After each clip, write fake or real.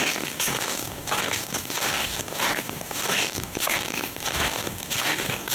fake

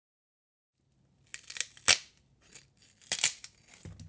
real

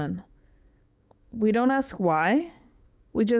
fake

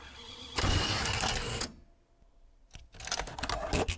real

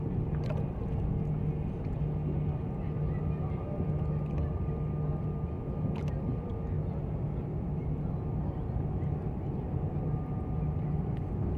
real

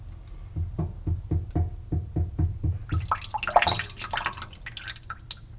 real